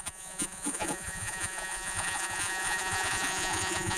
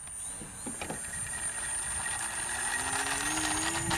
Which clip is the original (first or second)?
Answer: second